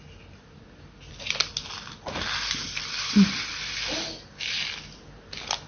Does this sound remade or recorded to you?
recorded